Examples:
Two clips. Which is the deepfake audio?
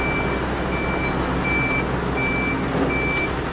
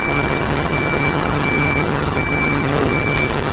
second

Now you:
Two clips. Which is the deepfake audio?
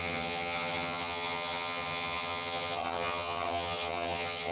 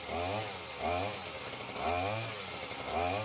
first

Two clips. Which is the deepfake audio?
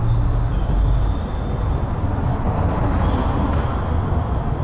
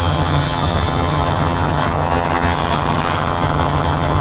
second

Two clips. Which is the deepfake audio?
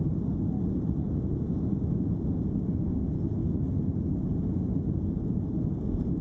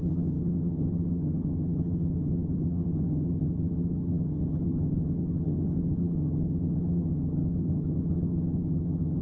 second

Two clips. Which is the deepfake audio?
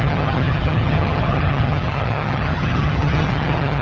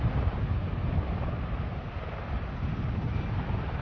first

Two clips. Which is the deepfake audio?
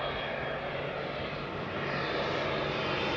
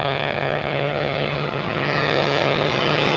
second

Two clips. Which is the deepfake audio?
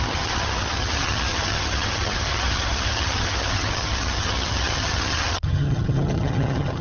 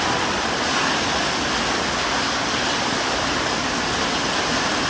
first